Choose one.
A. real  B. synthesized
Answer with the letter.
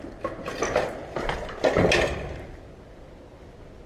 A